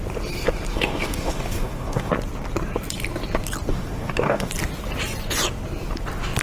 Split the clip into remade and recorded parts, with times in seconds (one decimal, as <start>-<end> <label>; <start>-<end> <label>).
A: 0.0-0.7 recorded; 0.7-2.1 remade; 2.1-3.7 recorded; 3.7-4.5 remade; 4.5-6.4 recorded